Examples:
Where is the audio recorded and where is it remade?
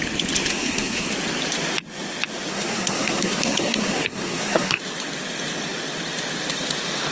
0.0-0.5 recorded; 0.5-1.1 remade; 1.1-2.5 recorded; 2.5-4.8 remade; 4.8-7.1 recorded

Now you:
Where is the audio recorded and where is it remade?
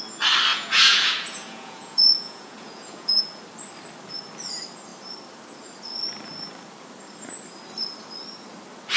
0.0-0.5 recorded; 0.5-3.4 remade; 3.4-9.0 recorded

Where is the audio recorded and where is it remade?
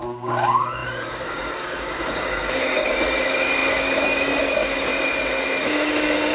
0.0-4.9 remade; 4.9-5.6 recorded; 5.6-6.3 remade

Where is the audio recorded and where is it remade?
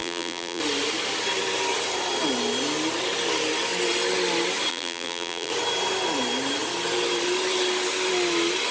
0.0-0.6 remade; 0.6-4.7 recorded; 4.7-5.5 remade; 5.5-8.7 recorded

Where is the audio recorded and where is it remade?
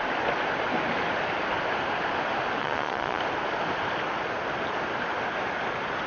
0.0-2.6 recorded; 2.6-3.2 remade; 3.2-6.1 recorded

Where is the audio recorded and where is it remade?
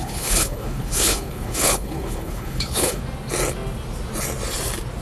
0.0-3.0 remade; 3.0-5.0 recorded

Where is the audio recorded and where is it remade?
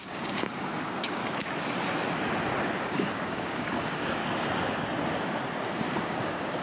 0.0-1.2 remade; 1.2-2.8 recorded; 2.8-4.2 remade; 4.2-5.7 recorded; 5.7-6.6 remade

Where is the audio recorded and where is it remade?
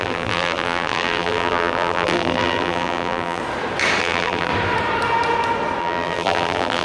0.0-3.4 remade; 3.4-4.0 recorded; 4.0-4.5 remade; 4.5-5.8 recorded; 5.8-6.8 remade